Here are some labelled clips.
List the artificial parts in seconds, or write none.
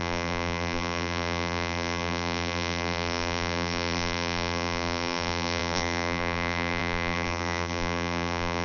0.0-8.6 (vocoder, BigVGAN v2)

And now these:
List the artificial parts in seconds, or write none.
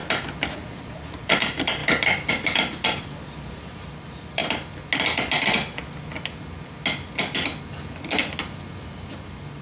0.7-1.8 (vocoder, BigVGAN v2); 2.3-4.4; 8.7-9.6